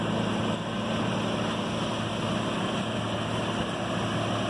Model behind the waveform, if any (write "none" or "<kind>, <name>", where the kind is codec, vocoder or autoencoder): none